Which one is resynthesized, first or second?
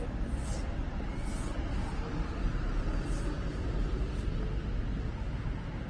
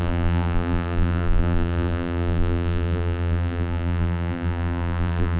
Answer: second